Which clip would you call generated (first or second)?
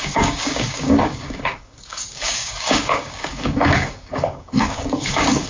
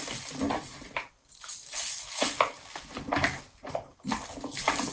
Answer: first